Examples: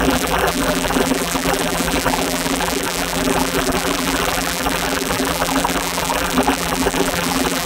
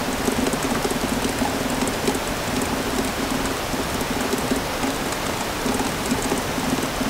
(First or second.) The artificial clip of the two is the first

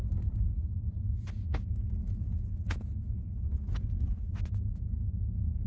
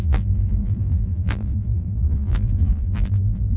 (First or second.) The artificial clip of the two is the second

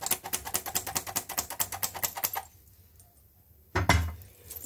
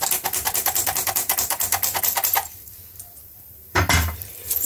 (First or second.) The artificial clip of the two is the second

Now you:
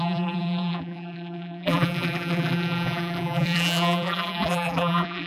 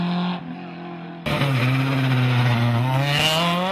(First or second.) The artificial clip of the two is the first